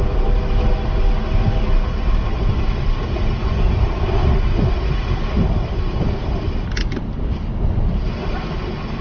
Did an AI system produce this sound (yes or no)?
no